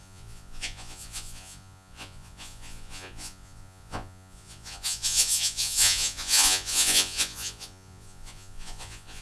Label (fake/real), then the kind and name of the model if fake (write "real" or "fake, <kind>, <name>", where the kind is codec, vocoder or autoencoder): fake, vocoder, Vocos